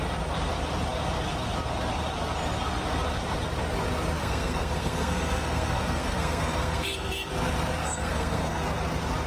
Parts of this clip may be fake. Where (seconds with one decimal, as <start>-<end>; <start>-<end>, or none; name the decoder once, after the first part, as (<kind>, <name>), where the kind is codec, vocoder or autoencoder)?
4.2-7.3 (codec, SNAC); 7.8-8.6